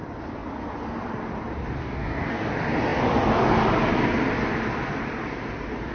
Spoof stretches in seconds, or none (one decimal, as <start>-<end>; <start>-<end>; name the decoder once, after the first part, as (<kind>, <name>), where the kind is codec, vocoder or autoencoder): 1.8-2.5 (codec, DAC)